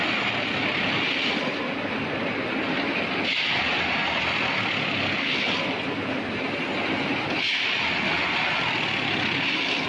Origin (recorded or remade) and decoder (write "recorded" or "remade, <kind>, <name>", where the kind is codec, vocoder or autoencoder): recorded